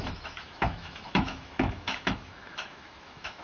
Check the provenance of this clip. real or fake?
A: fake